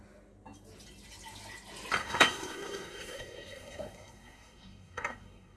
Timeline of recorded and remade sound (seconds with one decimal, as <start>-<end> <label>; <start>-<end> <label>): 0.0-2.0 recorded; 2.0-5.6 remade